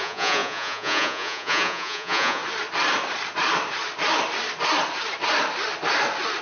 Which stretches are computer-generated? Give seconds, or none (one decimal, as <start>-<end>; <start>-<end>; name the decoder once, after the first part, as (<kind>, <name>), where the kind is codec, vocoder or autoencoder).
0.0-2.4 (vocoder, Vocos)